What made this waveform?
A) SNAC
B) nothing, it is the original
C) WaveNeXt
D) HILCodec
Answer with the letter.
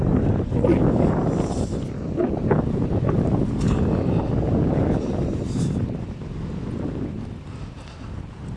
B